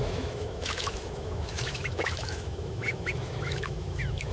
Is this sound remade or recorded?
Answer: remade